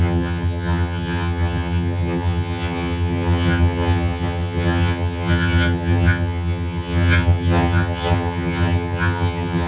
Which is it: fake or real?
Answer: fake